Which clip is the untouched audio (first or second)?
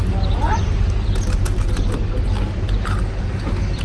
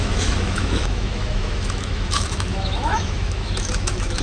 first